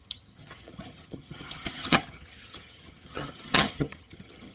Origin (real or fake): fake